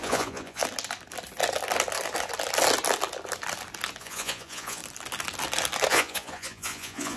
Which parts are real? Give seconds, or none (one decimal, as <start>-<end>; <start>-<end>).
0.6-4.0; 4.8-5.9

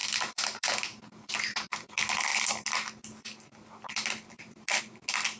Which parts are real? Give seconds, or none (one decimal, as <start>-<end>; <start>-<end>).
0.0-5.4

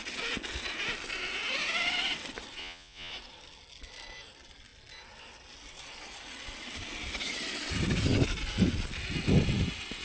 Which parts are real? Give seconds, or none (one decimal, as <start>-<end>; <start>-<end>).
0.0-2.6; 3.1-10.0

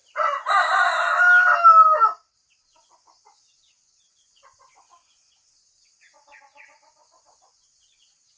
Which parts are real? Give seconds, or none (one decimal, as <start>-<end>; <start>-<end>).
0.0-2.6